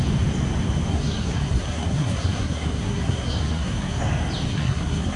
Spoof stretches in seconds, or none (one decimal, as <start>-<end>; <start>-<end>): 0.9-4.0; 4.5-5.2